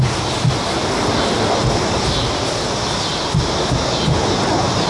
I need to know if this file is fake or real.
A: real